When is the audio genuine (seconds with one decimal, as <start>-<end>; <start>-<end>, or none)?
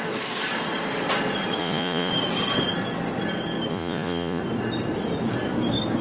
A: 0.0-1.6; 2.1-3.7; 4.4-6.0